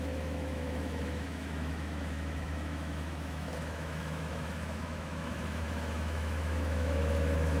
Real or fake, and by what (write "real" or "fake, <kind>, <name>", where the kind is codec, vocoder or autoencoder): fake, autoencoder, DAC-VAE